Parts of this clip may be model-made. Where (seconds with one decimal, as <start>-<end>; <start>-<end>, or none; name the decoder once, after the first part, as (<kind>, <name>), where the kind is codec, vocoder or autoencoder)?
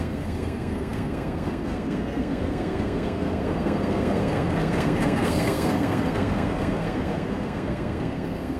0.0-8.6 (codec, SNAC)